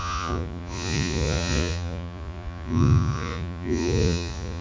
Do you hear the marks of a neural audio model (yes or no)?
yes